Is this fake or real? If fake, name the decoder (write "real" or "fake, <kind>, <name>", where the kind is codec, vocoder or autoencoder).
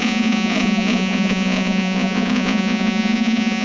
fake, vocoder, Vocos